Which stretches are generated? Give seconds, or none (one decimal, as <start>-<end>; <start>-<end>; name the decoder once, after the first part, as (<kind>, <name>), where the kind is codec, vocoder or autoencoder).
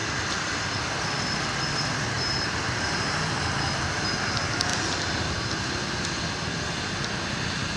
0.0-3.4 (vocoder, BigVGAN v2); 4.7-5.3